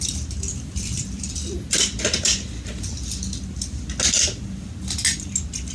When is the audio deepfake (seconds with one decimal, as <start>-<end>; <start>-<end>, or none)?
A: 0.5-1.0